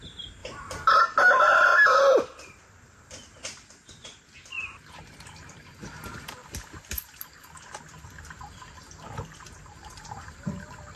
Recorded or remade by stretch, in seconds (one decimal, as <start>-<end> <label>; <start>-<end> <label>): 0.0-0.4 recorded; 0.4-1.0 remade; 1.0-1.7 recorded; 1.7-3.1 remade; 3.1-11.0 recorded